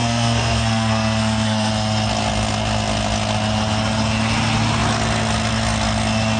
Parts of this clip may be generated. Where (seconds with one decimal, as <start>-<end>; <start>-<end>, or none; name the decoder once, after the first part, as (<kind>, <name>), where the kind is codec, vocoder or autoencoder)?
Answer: 0.0-1.7 (codec, SNAC)